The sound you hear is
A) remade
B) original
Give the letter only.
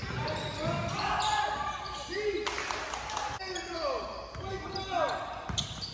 B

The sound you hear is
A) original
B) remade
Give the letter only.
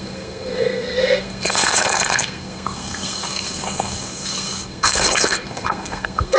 B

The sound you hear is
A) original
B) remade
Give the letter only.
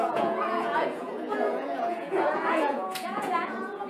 B